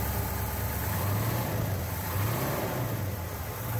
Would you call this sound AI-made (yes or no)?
no